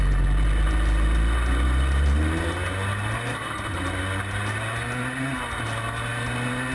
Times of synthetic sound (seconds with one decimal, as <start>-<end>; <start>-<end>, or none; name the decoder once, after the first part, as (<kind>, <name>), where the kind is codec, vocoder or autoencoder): 2.9-3.8 (vocoder, BigVGAN v2)